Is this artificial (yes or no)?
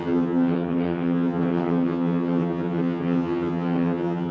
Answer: yes